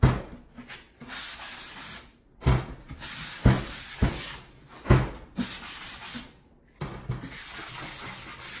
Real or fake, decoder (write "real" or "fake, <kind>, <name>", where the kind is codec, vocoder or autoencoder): real